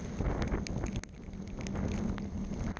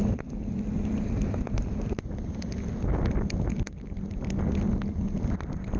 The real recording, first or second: first